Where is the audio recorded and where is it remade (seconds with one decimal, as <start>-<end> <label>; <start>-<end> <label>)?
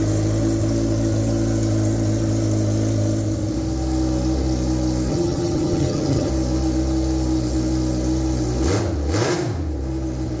0.0-5.1 recorded; 5.1-6.3 remade; 6.3-10.4 recorded